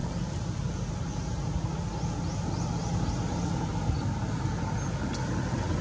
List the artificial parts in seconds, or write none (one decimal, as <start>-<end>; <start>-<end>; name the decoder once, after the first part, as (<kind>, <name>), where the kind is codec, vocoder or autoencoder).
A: none